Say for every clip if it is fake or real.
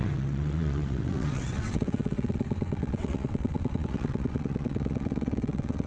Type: fake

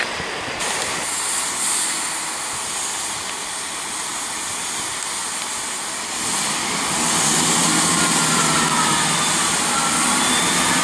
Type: real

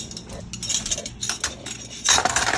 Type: real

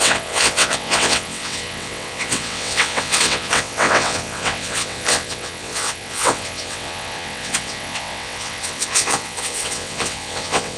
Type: fake